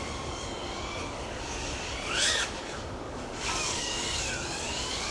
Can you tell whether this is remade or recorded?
remade